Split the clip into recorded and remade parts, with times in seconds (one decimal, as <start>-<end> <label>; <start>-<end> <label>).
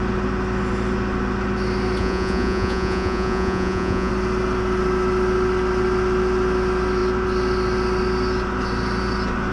0.0-2.0 recorded; 2.0-4.1 remade; 4.1-9.5 recorded